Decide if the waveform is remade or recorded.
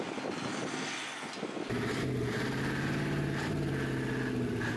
recorded